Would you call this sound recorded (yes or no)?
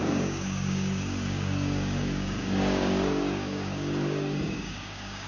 no